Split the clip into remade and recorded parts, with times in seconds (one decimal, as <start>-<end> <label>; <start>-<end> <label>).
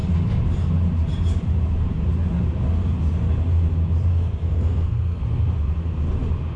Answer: 0.0-4.1 recorded; 4.1-5.2 remade; 5.2-6.6 recorded